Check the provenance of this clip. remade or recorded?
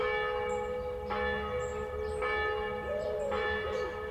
recorded